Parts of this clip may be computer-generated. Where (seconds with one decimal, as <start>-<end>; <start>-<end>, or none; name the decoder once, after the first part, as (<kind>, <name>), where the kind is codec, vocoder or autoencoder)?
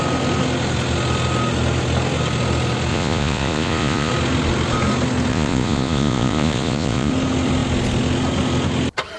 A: 2.9-4.1 (vocoder, Vocos); 5.3-7.1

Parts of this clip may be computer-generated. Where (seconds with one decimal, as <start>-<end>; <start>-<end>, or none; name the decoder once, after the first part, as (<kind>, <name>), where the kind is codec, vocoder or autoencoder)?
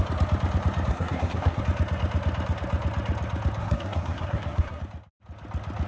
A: 0.9-1.6 (codec, SNAC); 3.6-4.8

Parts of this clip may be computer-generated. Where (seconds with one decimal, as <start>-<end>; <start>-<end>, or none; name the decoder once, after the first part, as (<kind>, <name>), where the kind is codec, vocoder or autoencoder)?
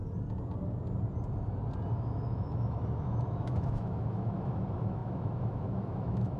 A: 2.0-6.4 (autoencoder, DAC-VAE)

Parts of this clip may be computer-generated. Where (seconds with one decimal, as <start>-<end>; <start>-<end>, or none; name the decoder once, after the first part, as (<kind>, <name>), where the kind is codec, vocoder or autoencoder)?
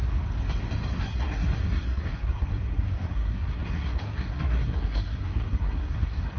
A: 1.0-6.4 (codec, SNAC)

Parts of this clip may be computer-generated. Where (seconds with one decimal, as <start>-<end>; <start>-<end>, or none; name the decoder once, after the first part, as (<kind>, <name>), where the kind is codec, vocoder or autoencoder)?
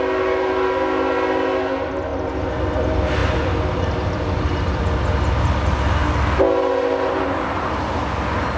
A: none